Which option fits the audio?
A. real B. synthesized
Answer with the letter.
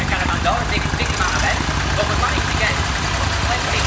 A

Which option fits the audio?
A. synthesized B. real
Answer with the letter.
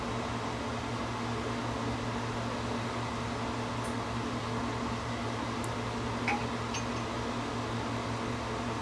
B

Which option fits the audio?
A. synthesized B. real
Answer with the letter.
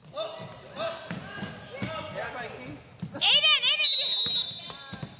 B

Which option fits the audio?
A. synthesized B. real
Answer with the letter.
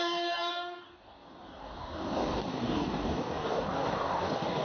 A